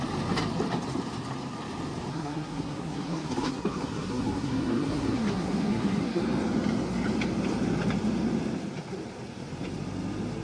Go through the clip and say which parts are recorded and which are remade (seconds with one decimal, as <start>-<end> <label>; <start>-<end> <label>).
0.0-2.1 recorded; 2.1-6.2 remade; 6.2-10.4 recorded